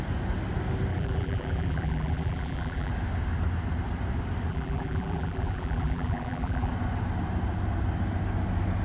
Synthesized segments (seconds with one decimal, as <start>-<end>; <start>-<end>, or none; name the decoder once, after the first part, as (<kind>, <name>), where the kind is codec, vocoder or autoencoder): 0.9-2.9 (vocoder, BigVGAN v2); 4.5-6.7